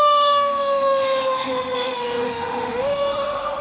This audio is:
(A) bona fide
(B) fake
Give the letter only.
B